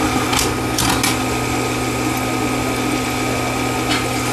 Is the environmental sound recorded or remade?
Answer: recorded